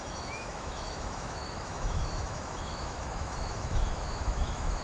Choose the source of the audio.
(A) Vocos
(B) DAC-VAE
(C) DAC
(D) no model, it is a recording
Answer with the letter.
B